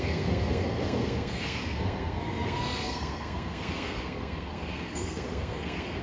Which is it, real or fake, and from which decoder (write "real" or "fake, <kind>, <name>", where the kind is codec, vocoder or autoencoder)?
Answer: fake, codec, SNAC